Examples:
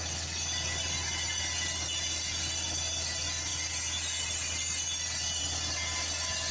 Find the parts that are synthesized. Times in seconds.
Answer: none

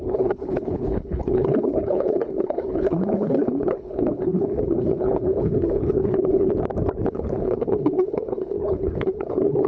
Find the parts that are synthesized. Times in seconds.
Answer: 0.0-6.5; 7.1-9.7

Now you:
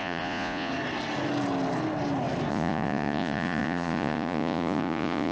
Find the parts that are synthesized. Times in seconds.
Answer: 0.0-0.7; 2.5-5.3

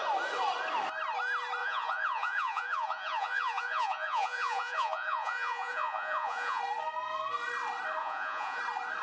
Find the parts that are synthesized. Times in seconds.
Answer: 1.6-6.6; 8.0-8.6

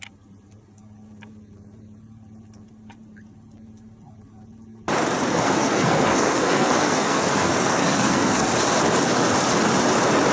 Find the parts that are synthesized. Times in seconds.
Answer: 5.3-8.5